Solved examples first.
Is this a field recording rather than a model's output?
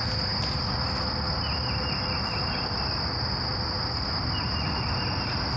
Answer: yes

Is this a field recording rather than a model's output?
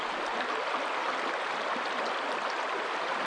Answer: yes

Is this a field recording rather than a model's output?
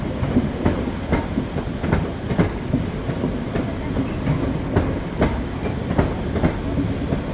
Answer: yes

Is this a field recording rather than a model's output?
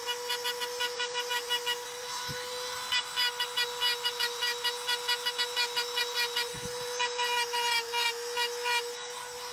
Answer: yes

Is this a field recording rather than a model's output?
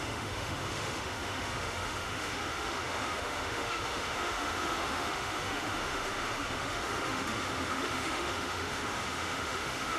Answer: no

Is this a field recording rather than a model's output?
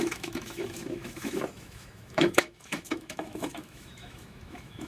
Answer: no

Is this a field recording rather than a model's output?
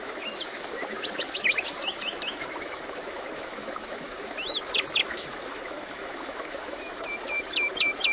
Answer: no